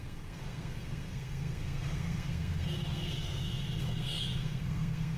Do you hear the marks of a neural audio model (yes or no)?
yes